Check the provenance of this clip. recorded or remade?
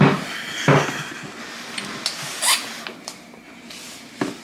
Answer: recorded